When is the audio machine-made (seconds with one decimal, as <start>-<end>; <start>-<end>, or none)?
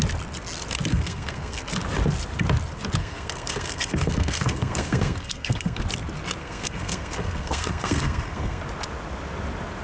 0.9-1.7; 3.0-5.8; 6.4-8.6